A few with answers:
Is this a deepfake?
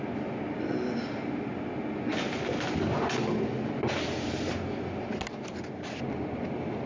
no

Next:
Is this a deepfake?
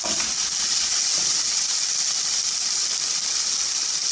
no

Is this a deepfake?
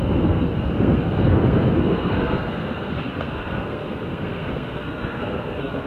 yes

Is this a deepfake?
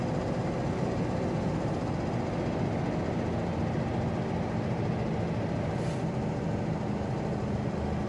no